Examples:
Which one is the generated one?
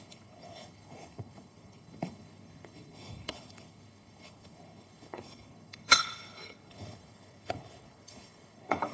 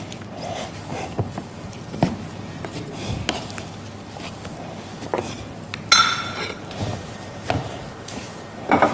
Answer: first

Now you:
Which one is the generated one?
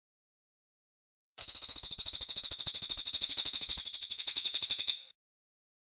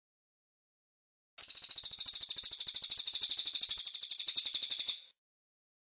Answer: first